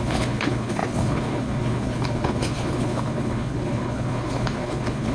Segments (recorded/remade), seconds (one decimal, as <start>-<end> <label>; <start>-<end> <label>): 0.0-5.1 remade

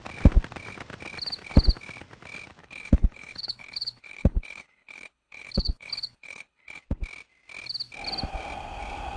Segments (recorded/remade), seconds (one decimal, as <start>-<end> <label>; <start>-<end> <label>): 0.0-2.6 recorded; 2.6-6.8 remade; 6.8-9.2 recorded

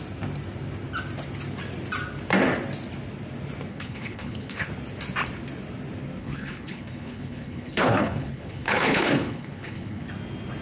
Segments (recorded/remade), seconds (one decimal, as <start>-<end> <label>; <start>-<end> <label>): 0.0-3.7 recorded; 3.7-4.7 remade; 4.7-6.2 recorded; 6.2-10.1 remade; 10.1-10.6 recorded

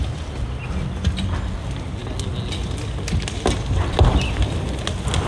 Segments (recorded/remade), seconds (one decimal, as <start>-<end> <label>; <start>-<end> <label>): 0.0-5.3 recorded